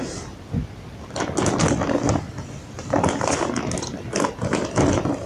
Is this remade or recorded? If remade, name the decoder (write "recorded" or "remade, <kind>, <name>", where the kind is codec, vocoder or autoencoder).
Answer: recorded